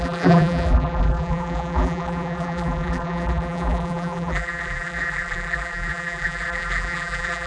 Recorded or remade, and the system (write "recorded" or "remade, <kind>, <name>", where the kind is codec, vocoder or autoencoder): remade, vocoder, BigVGAN v2